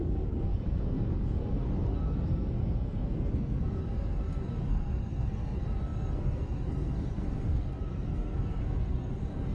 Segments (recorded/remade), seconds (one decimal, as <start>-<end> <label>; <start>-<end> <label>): 0.0-9.5 remade